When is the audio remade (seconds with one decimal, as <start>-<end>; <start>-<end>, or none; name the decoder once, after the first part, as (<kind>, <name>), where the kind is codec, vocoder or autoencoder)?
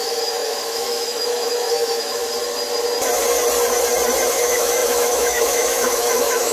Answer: 0.0-2.2 (autoencoder, DAC-VAE); 4.3-6.5